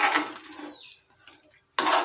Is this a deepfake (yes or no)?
no